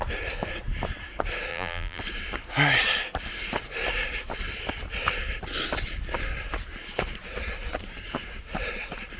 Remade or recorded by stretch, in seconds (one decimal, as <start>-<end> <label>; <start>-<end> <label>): 0.0-1.5 recorded; 1.5-2.0 remade; 2.0-9.2 recorded